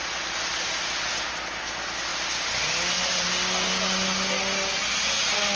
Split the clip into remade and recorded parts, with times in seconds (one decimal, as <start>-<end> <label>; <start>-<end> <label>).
0.0-1.3 remade; 1.3-5.6 recorded